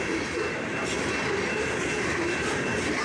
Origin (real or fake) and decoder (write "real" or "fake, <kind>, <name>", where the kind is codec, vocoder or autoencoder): real